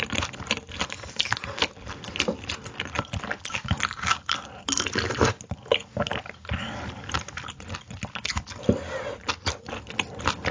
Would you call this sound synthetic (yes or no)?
no